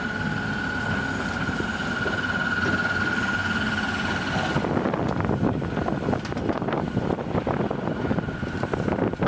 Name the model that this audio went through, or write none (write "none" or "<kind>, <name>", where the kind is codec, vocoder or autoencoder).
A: none